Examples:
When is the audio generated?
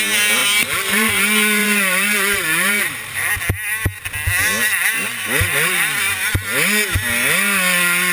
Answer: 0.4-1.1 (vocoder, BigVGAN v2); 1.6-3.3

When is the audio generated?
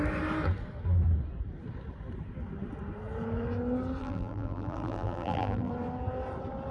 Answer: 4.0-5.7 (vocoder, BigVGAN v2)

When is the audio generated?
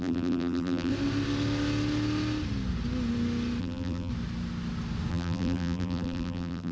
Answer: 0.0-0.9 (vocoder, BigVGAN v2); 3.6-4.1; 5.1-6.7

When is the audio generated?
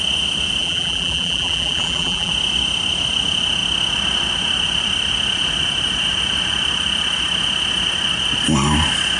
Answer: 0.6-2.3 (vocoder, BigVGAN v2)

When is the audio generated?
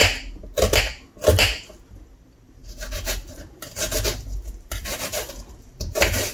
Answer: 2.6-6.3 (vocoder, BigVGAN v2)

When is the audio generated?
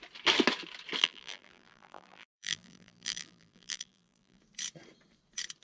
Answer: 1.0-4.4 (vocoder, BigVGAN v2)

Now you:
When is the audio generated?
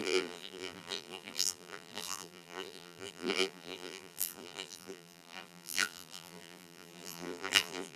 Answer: 0.0-8.0 (vocoder, BigVGAN v2)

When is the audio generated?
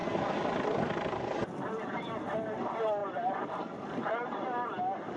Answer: 3.0-4.0 (vocoder, BigVGAN v2)